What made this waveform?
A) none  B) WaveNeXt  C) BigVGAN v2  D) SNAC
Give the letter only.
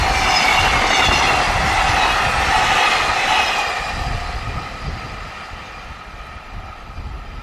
A